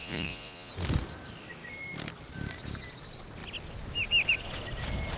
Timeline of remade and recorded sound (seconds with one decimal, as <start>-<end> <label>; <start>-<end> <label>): 0.0-0.7 remade; 0.7-5.2 recorded